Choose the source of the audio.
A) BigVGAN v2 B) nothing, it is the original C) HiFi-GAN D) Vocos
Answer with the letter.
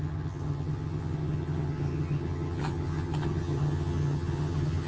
C